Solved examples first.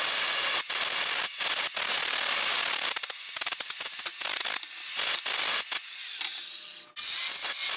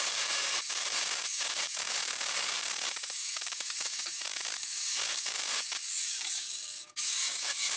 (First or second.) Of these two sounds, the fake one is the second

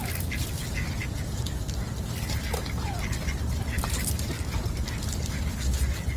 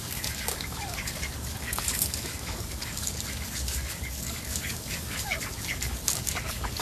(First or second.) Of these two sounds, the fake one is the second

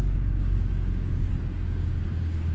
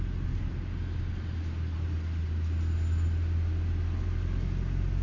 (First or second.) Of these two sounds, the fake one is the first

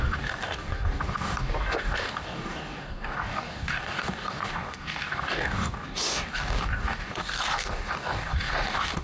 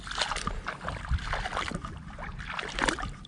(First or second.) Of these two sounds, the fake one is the first